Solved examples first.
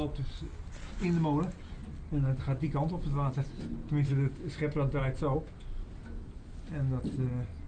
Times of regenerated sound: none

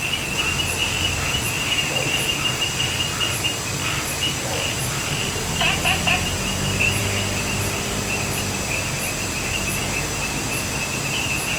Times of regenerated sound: none